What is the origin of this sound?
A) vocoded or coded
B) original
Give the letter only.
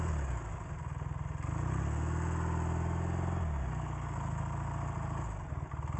B